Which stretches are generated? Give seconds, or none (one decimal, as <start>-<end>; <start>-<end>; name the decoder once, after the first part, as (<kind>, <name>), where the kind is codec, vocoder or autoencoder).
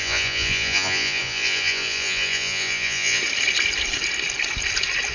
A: 0.0-3.2 (vocoder, Vocos)